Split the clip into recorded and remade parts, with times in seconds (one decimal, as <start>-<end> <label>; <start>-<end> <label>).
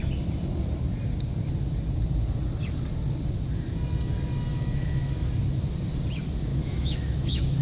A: 0.0-4.5 recorded; 4.5-5.3 remade; 5.3-6.5 recorded; 6.5-7.6 remade